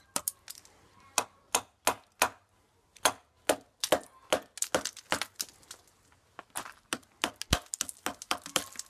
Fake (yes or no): no